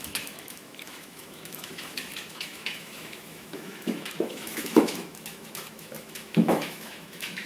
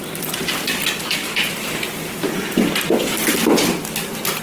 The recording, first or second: second